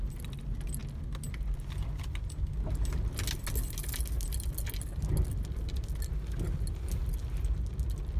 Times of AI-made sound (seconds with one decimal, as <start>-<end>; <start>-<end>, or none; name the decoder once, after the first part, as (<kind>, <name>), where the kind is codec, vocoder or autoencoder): none